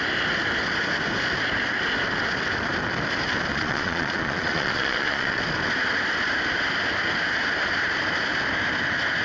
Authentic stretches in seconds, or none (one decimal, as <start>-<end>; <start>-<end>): 0.0-3.5; 5.4-9.2